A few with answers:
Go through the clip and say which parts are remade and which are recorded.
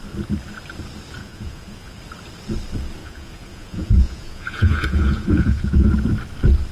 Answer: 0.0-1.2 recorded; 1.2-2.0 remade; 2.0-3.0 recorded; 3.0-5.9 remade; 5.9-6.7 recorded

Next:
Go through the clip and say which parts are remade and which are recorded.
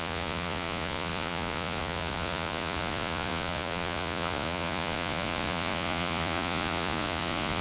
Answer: 0.0-7.6 remade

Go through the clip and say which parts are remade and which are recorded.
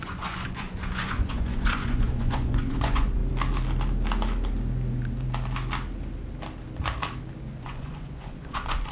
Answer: 0.0-3.2 remade; 3.2-7.6 recorded; 7.6-8.9 remade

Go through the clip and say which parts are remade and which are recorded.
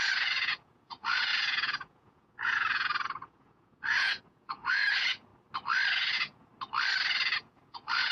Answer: 0.0-5.3 remade; 5.3-5.9 recorded; 5.9-6.5 remade; 6.5-7.4 recorded; 7.4-8.1 remade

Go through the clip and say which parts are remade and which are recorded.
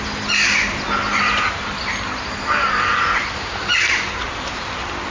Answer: 0.0-5.1 recorded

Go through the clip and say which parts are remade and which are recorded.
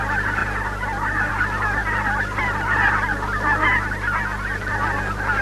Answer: 0.0-5.4 recorded